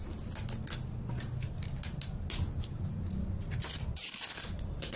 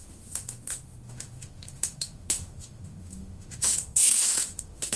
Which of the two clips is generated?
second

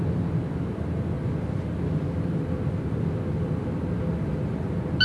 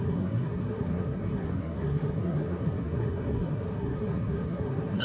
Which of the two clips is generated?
second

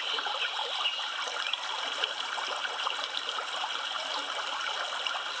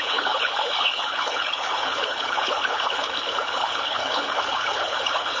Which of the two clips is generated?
second